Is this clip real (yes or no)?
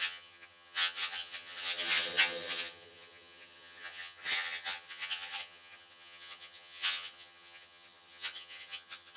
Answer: no